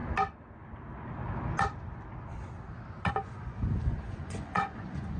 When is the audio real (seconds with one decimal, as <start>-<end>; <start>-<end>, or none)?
0.0-3.1